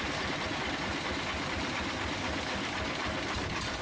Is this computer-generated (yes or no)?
no